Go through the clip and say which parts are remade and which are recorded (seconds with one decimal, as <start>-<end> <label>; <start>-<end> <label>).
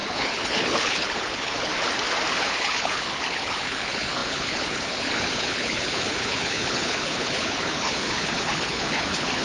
0.0-1.7 remade; 1.7-2.4 recorded; 2.4-9.4 remade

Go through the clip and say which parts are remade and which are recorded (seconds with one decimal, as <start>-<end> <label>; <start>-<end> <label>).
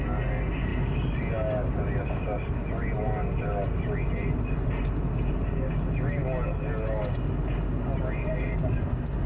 0.0-9.3 recorded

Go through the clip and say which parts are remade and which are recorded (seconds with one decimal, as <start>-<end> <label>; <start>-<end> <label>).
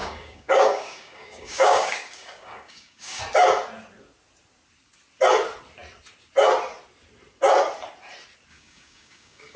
0.0-3.2 remade; 3.2-8.5 recorded; 8.5-9.6 remade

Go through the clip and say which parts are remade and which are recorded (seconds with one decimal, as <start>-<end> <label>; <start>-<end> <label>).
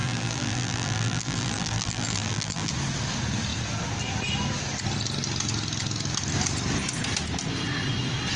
0.0-2.7 remade; 2.7-8.4 recorded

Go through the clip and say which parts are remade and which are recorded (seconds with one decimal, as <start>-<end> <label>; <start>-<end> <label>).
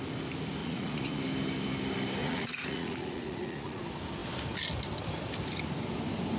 0.0-0.6 recorded; 0.6-1.2 remade; 1.2-2.2 recorded; 2.2-3.8 remade; 3.8-6.4 recorded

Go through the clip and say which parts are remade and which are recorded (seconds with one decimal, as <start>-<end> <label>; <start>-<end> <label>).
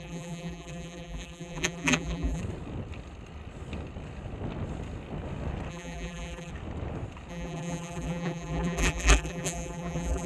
0.0-2.4 remade; 2.4-5.7 recorded; 5.7-6.5 remade; 6.5-7.3 recorded; 7.3-10.3 remade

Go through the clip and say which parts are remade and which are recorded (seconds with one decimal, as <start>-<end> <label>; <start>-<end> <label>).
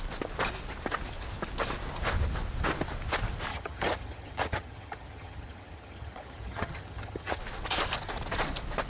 0.0-3.5 recorded; 3.5-7.4 remade; 7.4-8.9 recorded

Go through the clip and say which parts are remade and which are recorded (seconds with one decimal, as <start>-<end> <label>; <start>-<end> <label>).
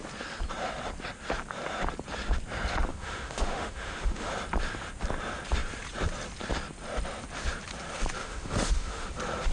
0.0-2.9 recorded; 2.9-4.3 remade; 4.3-8.2 recorded; 8.2-9.1 remade; 9.1-9.5 recorded